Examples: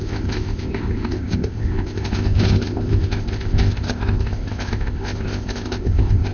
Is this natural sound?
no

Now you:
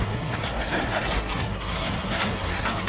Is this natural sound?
no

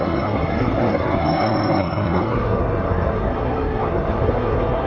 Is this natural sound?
no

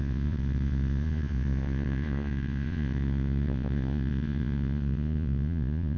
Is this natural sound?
no